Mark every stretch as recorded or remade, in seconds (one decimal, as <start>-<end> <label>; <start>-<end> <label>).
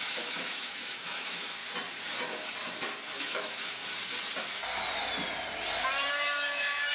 0.0-1.6 remade; 1.6-3.2 recorded; 3.2-3.8 remade; 3.8-6.1 recorded; 6.1-6.9 remade